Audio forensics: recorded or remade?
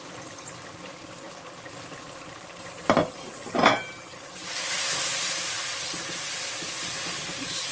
remade